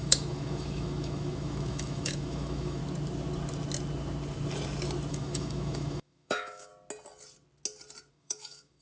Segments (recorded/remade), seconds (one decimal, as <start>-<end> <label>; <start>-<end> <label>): 0.0-2.8 remade; 2.8-5.1 recorded; 5.1-6.7 remade; 6.7-8.1 recorded; 8.1-8.8 remade